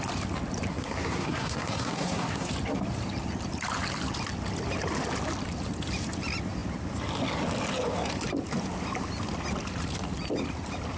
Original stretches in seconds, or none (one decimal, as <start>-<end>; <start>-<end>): 0.0-0.7; 2.5-11.0